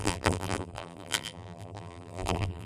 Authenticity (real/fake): fake